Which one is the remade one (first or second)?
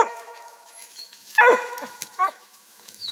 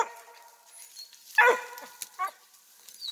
first